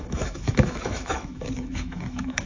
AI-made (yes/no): yes